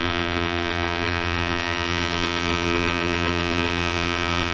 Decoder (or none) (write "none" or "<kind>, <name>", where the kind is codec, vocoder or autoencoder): vocoder, BigVGAN v2